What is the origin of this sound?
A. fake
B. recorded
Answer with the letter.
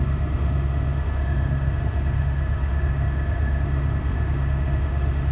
A